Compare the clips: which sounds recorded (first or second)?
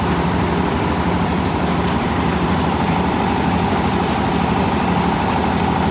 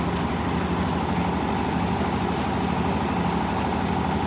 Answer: second